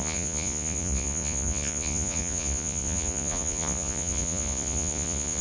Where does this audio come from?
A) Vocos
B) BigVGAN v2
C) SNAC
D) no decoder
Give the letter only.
A